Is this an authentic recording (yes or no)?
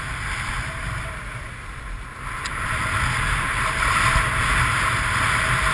yes